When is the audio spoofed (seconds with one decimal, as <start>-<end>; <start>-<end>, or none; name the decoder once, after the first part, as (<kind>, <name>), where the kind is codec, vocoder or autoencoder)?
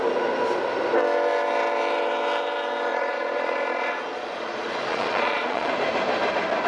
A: 2.9-5.7 (vocoder, Vocos)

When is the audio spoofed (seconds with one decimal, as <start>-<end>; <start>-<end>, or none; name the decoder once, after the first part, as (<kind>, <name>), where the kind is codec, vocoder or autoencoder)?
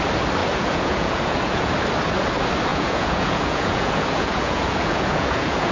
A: 0.4-1.7 (vocoder, Vocos); 2.7-5.7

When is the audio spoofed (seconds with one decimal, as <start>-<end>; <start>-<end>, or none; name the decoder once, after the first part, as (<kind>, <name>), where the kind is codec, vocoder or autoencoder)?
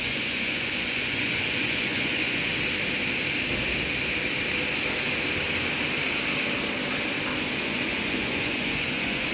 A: 0.0-2.5 (vocoder, Vocos); 7.6-9.3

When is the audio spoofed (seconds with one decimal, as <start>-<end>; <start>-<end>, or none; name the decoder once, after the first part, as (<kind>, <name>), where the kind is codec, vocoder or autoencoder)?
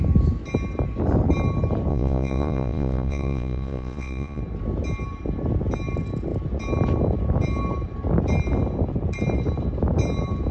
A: 1.9-4.4 (vocoder, Vocos)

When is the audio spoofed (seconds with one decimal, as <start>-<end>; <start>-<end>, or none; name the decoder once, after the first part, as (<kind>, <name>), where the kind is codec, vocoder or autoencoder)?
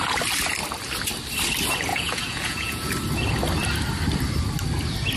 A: 1.9-2.9 (vocoder, Vocos)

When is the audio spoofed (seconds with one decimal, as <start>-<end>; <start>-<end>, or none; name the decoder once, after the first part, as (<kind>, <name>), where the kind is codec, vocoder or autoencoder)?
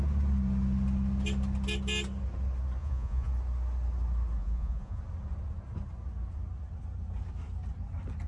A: 2.8-3.3 (vocoder, Vocos); 4.4-5.0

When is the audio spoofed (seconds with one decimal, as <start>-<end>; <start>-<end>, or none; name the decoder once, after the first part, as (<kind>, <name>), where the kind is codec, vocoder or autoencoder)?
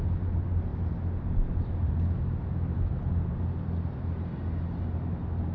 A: none